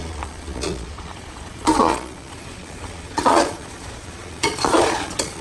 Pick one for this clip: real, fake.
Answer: fake